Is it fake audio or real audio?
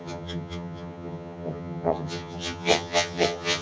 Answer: fake